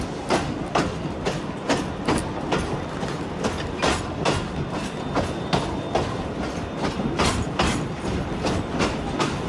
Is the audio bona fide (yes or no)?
yes